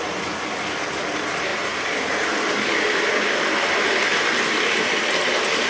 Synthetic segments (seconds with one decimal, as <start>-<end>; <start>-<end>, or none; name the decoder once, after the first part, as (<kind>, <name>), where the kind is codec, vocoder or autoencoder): none